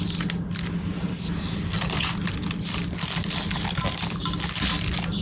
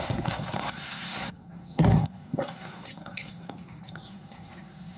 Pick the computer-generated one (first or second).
second